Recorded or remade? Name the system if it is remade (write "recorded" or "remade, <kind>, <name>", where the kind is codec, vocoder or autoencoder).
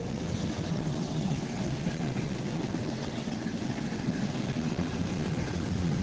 remade, vocoder, WaveNeXt